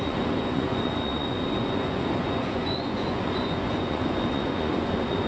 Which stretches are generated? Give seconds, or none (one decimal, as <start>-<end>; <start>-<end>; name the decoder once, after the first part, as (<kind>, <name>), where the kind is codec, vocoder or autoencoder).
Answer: 0.0-5.3 (vocoder, Vocos)